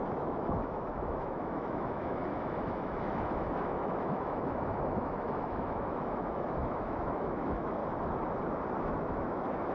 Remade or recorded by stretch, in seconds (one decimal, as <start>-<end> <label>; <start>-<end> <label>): 0.0-7.8 remade; 7.8-8.8 recorded; 8.8-9.7 remade